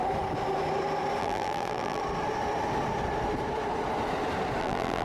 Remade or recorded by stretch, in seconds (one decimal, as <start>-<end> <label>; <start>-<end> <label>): 0.0-1.2 recorded; 1.2-2.0 remade; 2.0-4.6 recorded; 4.6-5.0 remade